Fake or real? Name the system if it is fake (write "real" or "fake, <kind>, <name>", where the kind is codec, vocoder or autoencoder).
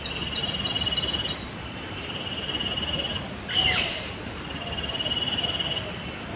real